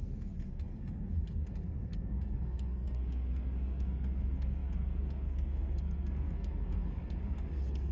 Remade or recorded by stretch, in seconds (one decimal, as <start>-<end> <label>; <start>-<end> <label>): 0.0-7.9 remade